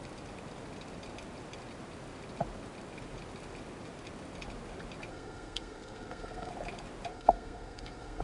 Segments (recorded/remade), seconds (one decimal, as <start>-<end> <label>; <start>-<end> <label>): 0.0-5.1 recorded; 5.1-6.5 remade; 6.5-7.1 recorded; 7.1-8.2 remade